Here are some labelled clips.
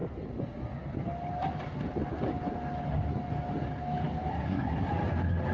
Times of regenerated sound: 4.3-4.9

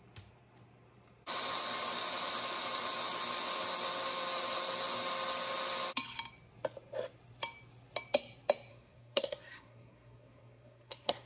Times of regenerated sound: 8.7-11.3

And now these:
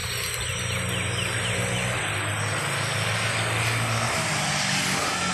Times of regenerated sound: none

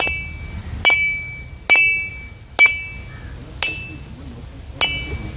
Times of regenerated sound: none

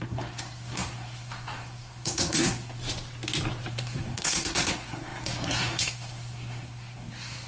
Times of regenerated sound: 0.0-2.8; 3.7-7.5

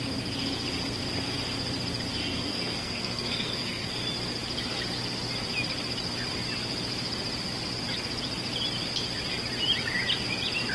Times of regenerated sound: 2.2-3.9